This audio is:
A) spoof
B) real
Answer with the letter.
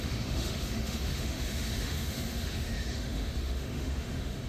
A